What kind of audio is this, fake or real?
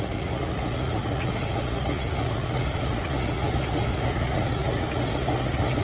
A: fake